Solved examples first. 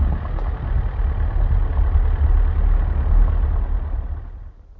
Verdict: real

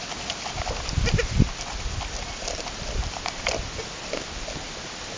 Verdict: real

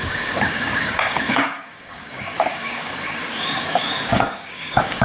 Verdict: fake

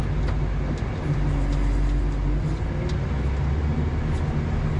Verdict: real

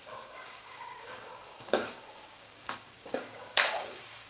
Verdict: fake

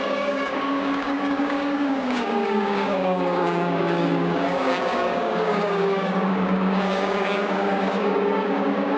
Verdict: fake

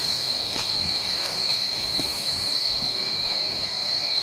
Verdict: fake